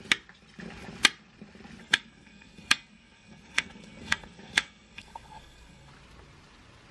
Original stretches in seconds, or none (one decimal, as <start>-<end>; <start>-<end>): 0.0-1.8; 5.9-6.9